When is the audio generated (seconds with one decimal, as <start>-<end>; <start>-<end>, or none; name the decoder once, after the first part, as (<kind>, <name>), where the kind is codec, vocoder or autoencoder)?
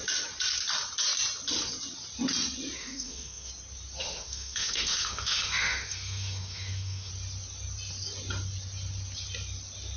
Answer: 2.8-3.5 (autoencoder, DAC-VAE); 4.0-7.1